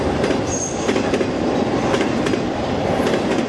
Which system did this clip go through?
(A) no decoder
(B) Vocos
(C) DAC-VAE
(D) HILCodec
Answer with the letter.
A